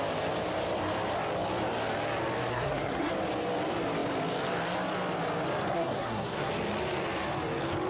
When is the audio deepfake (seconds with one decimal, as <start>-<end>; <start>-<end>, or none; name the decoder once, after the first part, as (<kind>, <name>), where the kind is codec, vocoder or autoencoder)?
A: 2.5-3.1 (codec, SNAC); 5.7-6.5